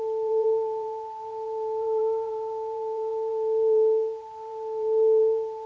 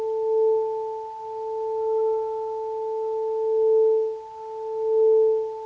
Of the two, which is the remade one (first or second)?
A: first